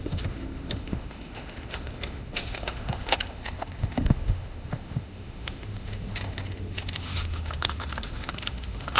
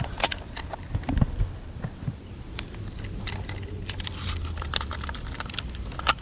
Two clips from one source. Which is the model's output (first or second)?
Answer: first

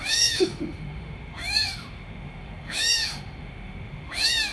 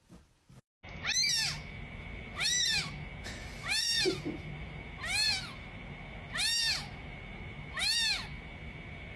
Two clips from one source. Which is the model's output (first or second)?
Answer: first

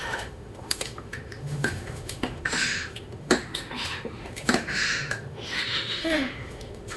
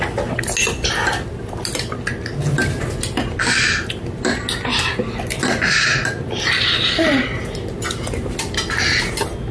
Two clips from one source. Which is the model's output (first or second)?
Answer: first